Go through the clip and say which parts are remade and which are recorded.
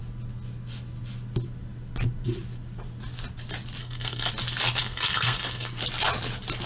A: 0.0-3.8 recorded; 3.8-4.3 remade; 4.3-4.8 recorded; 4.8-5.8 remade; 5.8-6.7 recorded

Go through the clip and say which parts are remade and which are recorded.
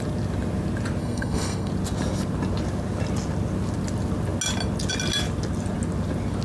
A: 0.0-1.0 recorded; 1.0-1.7 remade; 1.7-6.4 recorded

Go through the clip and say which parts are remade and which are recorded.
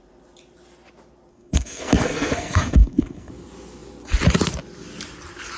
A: 0.0-1.3 recorded; 1.3-3.3 remade; 3.3-5.6 recorded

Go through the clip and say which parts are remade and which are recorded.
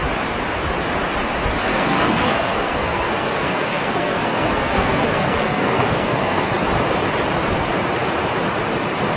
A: 0.0-1.7 recorded; 1.7-6.5 remade; 6.5-9.2 recorded